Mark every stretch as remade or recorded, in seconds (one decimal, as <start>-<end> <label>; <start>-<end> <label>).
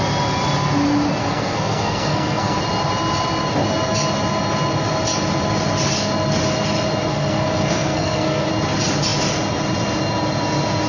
0.0-1.2 recorded; 1.2-2.6 remade; 2.6-7.1 recorded; 7.1-8.5 remade; 8.5-10.9 recorded